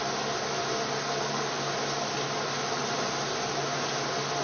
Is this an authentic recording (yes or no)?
yes